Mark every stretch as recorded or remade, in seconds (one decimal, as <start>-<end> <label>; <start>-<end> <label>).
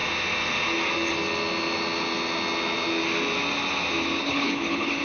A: 0.0-4.2 recorded; 4.2-5.0 remade